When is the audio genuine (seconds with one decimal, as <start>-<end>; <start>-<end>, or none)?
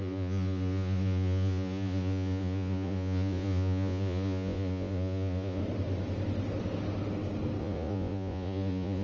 5.6-7.6